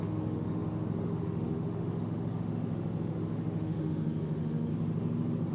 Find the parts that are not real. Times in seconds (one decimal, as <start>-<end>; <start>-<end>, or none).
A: 0.0-4.7